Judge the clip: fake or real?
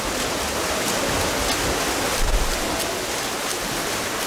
real